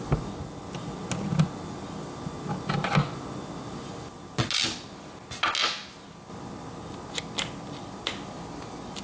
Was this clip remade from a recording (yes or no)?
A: no